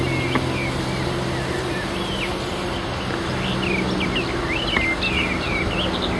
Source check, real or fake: real